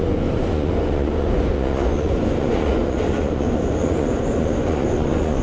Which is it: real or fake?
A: fake